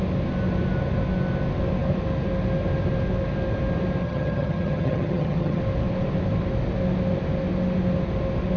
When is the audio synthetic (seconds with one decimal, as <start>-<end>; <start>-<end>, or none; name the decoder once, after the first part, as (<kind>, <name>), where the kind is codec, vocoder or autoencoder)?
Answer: 4.0-5.6 (vocoder, HiFi-GAN)

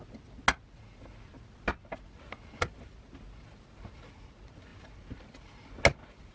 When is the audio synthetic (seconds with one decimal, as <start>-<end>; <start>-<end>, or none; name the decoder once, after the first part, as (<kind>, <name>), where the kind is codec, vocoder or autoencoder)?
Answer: none